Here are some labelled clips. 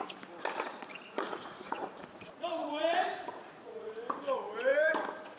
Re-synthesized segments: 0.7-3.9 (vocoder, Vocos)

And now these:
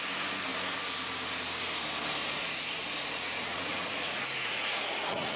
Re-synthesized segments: 2.2-5.4 (vocoder, Vocos)

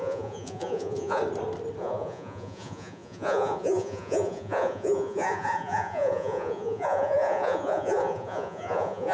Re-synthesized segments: 0.0-1.2 (vocoder, Vocos); 1.8-9.1